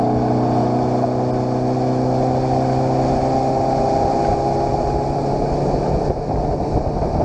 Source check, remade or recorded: recorded